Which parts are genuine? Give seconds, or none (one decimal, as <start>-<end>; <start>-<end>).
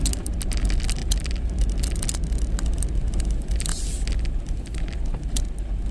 0.0-5.9